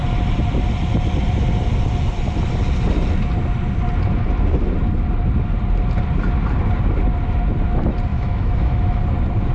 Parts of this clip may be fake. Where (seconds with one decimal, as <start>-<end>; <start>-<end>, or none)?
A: 8.1-9.0

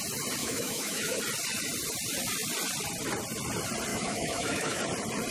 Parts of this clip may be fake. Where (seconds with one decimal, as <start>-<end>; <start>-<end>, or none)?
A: 0.4-1.2; 3.9-4.8

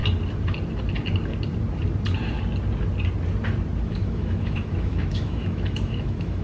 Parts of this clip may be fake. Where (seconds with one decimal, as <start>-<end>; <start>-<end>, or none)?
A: 3.8-6.4

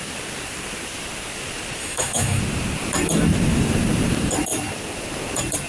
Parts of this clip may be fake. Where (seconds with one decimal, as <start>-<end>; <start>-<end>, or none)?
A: 1.8-2.4

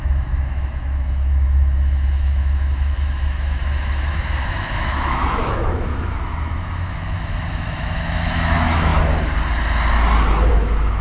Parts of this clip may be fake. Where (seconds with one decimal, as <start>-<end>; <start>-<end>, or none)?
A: 0.0-8.9; 10.5-11.0